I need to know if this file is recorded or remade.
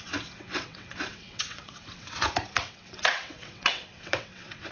remade